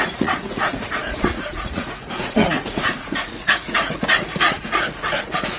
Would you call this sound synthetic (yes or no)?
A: yes